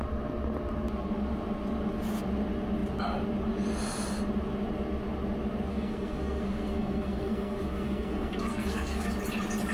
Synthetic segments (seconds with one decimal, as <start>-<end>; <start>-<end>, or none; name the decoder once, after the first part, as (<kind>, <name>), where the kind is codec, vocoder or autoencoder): 5.7-9.1 (codec, SNAC)